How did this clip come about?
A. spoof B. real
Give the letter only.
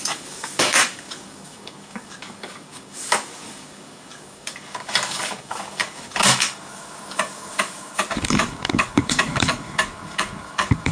A